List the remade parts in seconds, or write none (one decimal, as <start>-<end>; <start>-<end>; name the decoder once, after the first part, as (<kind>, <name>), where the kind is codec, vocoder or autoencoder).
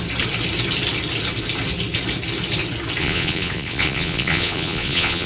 3.0-5.3 (vocoder, Vocos)